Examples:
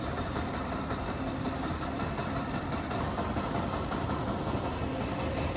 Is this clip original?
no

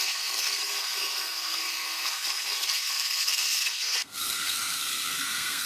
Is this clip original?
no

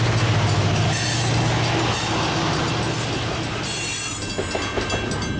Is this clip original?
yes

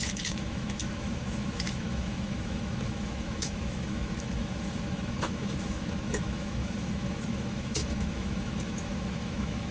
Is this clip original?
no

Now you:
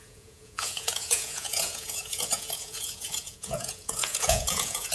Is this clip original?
no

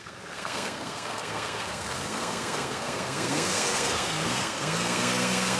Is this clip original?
no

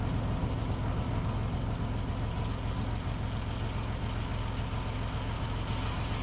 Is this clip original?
yes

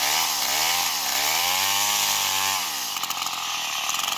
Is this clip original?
yes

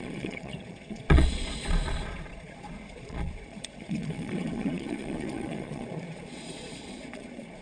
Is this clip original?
no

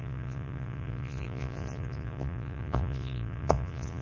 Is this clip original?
no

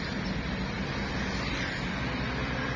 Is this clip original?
yes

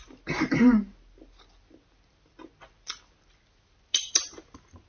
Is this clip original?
yes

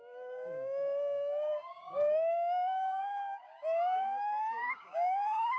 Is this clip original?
no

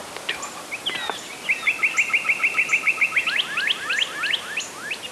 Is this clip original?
yes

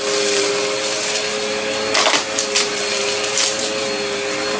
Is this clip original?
yes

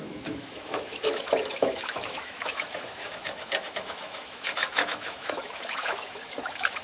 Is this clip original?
no